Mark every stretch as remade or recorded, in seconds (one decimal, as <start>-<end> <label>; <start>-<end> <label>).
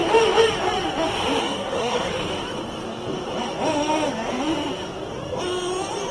0.0-1.4 recorded; 1.4-2.1 remade; 2.1-6.1 recorded